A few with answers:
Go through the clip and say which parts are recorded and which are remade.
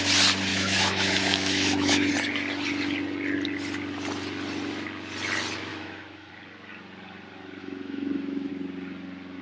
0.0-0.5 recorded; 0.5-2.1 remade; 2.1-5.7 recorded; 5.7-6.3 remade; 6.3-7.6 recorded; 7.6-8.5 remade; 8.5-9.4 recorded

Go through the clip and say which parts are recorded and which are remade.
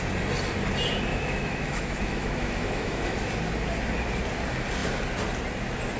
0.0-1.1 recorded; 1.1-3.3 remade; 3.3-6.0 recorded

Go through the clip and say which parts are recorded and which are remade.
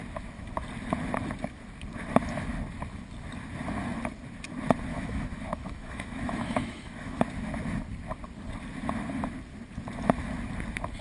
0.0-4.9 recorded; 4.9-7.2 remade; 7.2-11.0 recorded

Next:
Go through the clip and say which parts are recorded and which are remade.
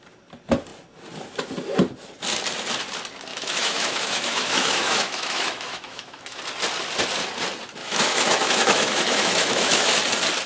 0.0-3.3 recorded; 3.3-6.4 remade; 6.4-7.8 recorded; 7.8-9.9 remade; 9.9-10.5 recorded